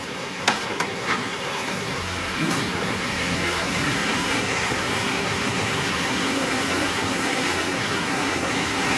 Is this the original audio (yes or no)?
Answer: no